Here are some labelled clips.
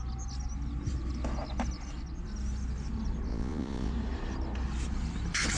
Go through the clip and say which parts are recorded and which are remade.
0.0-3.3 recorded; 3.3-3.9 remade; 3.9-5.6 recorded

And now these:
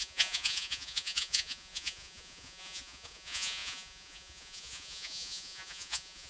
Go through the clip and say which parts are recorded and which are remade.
0.0-6.3 remade